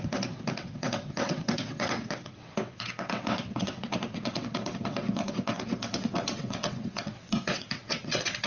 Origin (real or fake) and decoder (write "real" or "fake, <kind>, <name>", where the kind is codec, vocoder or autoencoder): fake, vocoder, WaveNeXt